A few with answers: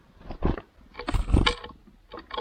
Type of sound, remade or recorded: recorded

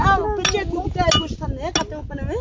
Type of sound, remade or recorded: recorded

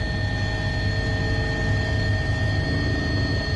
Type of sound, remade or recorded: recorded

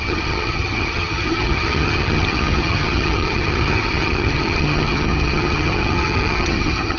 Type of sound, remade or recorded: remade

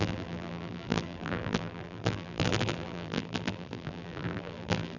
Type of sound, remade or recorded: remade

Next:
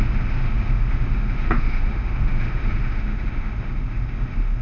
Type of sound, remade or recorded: remade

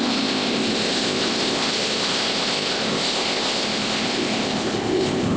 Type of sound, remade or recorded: remade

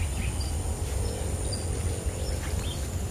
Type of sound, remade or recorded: recorded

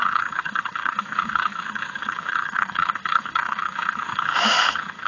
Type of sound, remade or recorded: remade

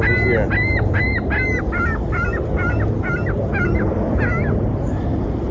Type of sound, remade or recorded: recorded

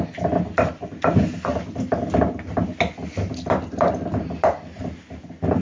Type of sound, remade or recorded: recorded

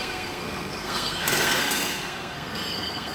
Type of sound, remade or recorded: remade